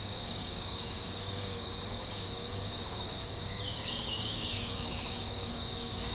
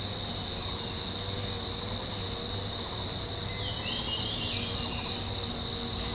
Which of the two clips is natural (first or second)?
second